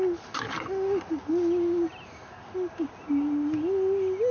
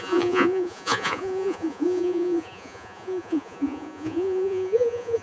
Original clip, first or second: first